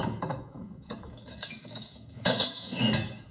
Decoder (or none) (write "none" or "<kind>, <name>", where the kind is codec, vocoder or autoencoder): autoencoder, DAC-VAE